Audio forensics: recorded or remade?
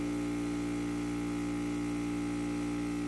recorded